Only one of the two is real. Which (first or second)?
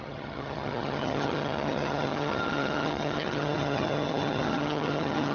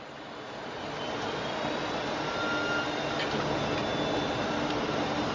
second